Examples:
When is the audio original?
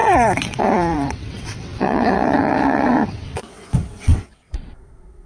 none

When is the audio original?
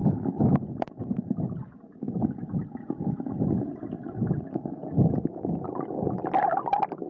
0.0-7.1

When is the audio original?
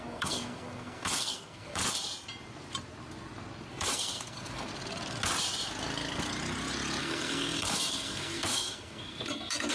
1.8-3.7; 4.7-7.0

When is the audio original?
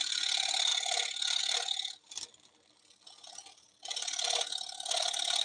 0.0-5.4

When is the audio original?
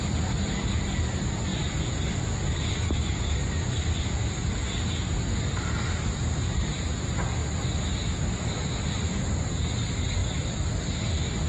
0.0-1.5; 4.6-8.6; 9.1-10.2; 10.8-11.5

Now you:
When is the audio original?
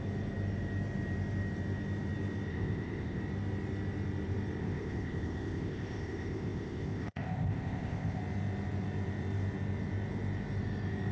0.0-2.5; 3.2-4.6; 8.2-11.1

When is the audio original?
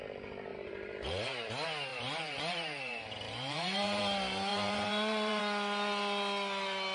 0.0-0.5; 1.5-1.9; 4.0-4.5; 5.4-6.9